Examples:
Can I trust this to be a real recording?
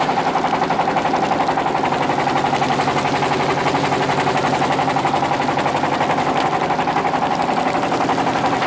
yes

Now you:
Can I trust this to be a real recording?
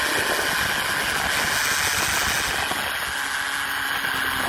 yes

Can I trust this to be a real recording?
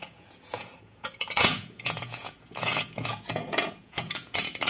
no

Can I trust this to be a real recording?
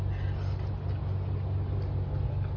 yes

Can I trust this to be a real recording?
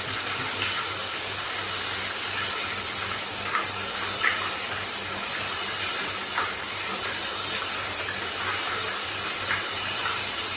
yes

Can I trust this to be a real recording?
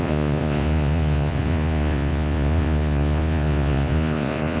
no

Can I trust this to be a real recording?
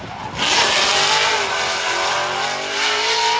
yes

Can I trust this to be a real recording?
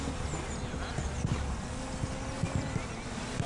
yes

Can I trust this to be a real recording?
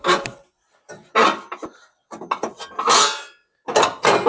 yes